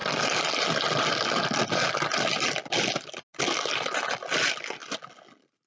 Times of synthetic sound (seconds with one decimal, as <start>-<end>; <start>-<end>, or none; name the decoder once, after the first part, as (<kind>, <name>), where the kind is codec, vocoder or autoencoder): none